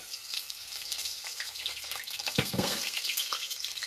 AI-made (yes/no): yes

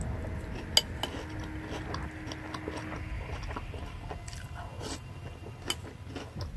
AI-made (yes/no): no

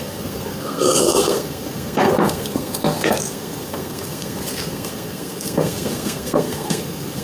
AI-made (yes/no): yes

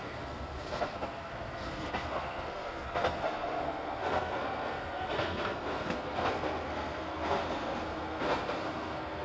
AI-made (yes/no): yes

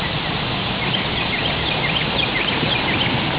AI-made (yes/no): no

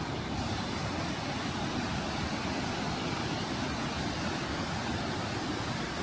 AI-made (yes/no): no